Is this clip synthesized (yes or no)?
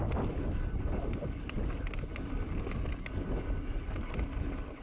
no